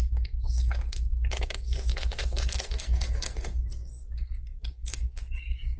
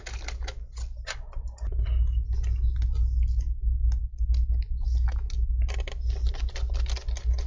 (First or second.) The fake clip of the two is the first